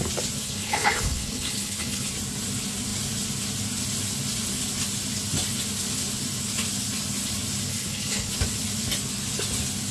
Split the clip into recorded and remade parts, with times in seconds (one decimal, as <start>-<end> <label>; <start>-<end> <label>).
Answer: 0.0-0.4 recorded; 0.4-2.1 remade; 2.1-7.7 recorded; 7.7-8.3 remade; 8.3-9.9 recorded